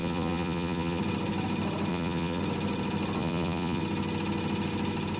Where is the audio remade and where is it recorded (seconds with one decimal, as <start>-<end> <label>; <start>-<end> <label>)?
0.0-1.0 remade; 1.0-1.9 recorded; 1.9-2.4 remade; 2.4-3.2 recorded; 3.2-3.8 remade; 3.8-5.2 recorded